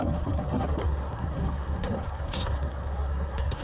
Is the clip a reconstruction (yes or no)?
yes